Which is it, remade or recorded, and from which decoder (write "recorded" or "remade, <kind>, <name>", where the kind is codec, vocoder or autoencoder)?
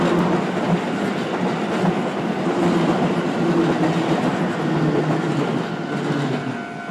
recorded